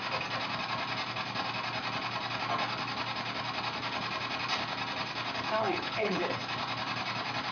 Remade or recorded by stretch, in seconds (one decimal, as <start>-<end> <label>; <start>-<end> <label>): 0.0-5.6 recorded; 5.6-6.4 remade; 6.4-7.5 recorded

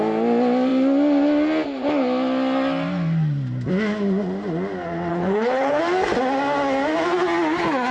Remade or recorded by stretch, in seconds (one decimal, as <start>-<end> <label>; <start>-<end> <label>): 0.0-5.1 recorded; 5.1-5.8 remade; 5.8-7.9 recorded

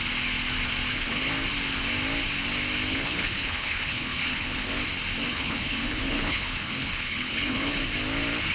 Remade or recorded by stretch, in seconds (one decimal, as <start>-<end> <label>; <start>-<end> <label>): 0.0-0.9 recorded; 0.9-1.3 remade; 1.3-2.9 recorded; 2.9-4.7 remade; 4.7-5.2 recorded; 5.2-7.8 remade; 7.8-8.5 recorded